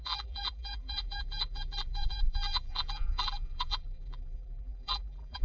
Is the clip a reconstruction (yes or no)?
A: yes